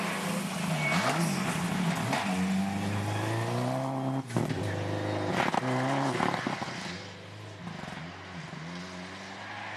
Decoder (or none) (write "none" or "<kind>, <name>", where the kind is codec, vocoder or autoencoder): none